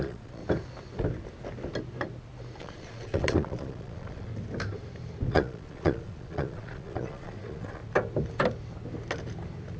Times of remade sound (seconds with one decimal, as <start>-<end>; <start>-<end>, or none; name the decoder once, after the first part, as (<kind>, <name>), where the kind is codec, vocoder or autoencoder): 0.0-0.4 (vocoder, Vocos); 2.6-4.3; 5.3-7.8

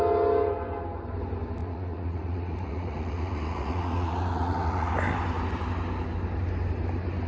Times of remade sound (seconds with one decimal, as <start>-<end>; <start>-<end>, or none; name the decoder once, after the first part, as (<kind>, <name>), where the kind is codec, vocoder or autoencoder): 1.6-4.9 (vocoder, Vocos)

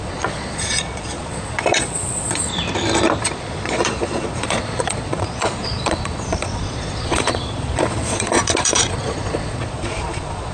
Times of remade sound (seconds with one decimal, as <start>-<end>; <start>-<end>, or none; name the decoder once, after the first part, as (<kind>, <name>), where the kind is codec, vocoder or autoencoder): 0.0-2.5 (vocoder, Vocos); 3.2-10.5

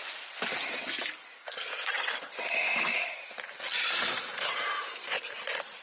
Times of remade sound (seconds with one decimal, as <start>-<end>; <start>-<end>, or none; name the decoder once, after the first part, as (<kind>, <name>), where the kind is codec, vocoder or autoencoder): none

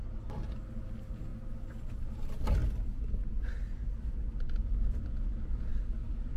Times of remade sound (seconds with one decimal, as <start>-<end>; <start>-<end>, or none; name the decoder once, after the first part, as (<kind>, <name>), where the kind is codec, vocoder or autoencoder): 4.6-5.7 (vocoder, Vocos)

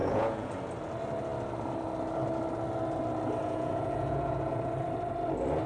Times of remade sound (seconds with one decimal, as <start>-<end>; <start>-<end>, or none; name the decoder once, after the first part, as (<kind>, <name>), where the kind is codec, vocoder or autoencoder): 0.0-0.5 (vocoder, Vocos); 3.4-4.5